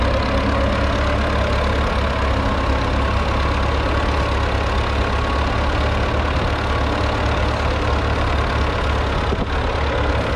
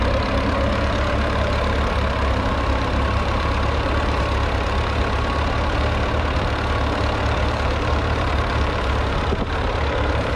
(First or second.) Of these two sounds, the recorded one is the first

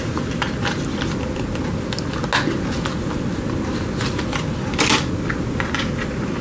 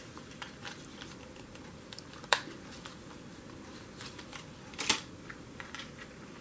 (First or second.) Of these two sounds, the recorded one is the first